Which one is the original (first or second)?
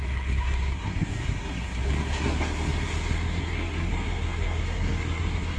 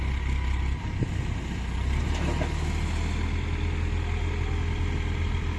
second